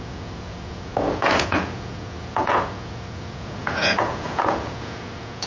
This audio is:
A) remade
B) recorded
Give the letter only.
A